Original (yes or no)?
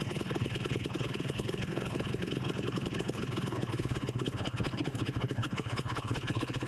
no